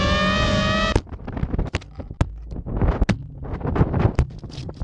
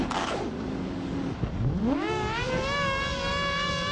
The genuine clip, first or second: first